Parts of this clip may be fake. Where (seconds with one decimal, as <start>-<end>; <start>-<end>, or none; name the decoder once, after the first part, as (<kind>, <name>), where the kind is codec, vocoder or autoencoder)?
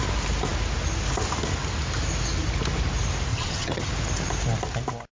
3.3-3.9 (vocoder, HiFi-GAN)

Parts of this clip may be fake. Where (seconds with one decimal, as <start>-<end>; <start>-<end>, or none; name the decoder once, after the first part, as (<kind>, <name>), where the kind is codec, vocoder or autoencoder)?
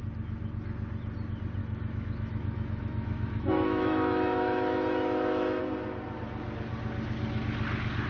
1.6-5.6 (autoencoder, DAC-VAE)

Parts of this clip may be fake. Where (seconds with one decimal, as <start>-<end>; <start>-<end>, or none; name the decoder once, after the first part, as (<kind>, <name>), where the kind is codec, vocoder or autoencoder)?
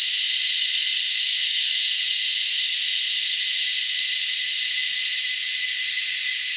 1.3-1.9 (autoencoder, DAC-VAE)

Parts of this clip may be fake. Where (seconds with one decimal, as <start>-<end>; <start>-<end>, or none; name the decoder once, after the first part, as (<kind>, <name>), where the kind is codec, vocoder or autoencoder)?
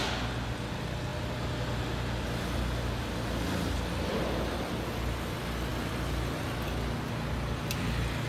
none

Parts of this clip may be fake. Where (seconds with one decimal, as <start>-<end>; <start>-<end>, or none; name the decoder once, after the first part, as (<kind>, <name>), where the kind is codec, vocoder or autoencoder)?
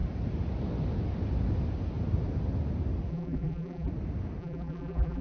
3.1-3.9 (vocoder, BigVGAN v2); 4.4-5.2